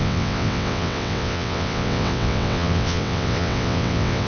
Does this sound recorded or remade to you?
remade